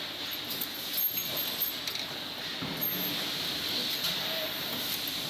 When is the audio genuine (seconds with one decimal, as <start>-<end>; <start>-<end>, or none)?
0.0-5.3